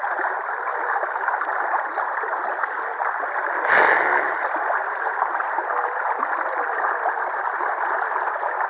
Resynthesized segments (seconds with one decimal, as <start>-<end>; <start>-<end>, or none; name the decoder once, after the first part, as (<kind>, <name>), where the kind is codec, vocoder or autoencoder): 0.7-1.3 (autoencoder, DAC-VAE)